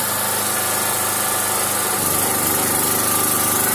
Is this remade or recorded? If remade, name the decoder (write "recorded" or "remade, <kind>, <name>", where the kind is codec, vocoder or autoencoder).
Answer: recorded